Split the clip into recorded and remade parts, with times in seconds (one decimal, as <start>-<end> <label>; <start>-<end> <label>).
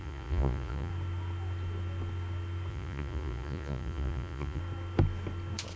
0.0-0.9 remade; 0.9-2.7 recorded; 2.7-4.6 remade; 4.6-5.8 recorded